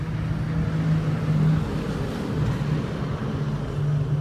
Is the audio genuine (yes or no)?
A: yes